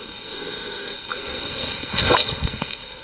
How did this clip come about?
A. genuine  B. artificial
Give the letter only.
B